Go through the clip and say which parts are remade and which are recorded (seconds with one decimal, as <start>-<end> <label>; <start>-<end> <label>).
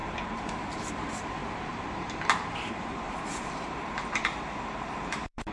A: 0.0-5.5 remade